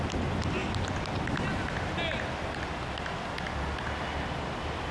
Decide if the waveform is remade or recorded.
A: recorded